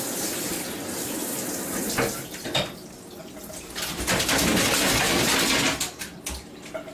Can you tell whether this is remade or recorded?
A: recorded